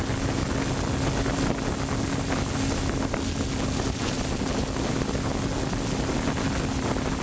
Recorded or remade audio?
recorded